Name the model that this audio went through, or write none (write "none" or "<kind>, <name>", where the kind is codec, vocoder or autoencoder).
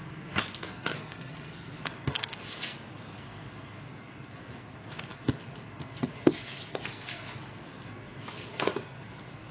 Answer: codec, SNAC